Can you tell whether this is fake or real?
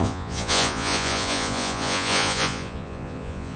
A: fake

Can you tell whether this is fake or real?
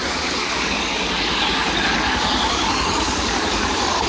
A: fake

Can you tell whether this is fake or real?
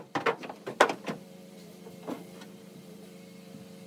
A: real